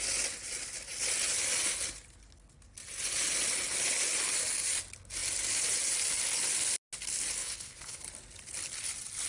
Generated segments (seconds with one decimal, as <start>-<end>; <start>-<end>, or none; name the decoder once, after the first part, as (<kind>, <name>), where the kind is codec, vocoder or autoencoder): 7.4-8.0 (codec, HILCodec)